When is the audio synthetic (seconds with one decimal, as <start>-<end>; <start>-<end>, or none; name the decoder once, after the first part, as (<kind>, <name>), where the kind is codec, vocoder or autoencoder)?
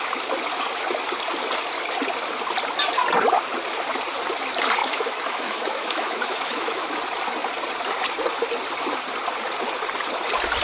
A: 4.8-7.0 (autoencoder, DAC-VAE)